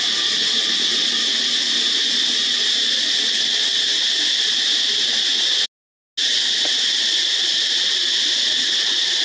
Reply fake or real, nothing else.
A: real